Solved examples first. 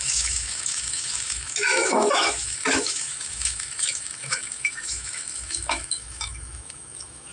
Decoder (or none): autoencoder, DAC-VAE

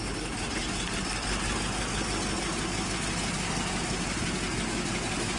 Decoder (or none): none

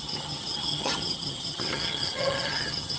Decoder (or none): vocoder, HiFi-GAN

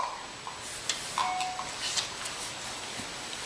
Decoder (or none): none